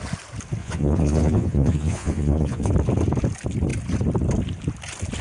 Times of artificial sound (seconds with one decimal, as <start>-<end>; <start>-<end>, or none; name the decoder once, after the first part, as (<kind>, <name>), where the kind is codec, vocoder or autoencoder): 0.6-2.7 (vocoder, Vocos)